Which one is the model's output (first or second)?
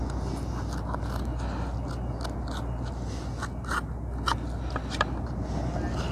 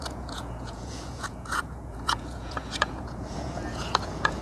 second